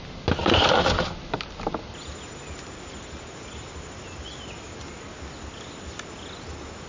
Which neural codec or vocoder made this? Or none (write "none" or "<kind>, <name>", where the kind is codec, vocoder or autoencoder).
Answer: none